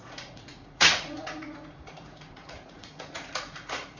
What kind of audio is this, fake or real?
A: fake